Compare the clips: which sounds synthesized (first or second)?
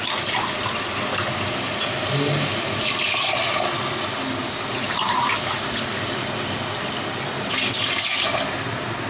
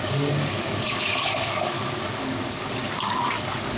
second